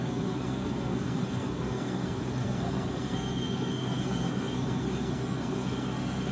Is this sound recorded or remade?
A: remade